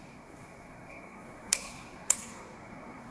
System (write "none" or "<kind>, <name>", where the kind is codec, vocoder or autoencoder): codec, SNAC